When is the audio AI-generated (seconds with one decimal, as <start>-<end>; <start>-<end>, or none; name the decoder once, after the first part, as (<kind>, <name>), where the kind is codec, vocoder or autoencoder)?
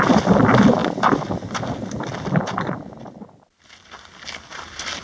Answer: none